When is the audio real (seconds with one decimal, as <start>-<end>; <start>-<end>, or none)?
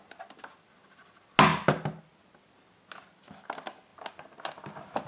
0.0-5.1